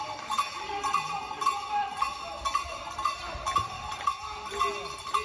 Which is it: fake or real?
real